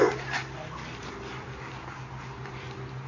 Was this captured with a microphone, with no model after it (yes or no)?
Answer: yes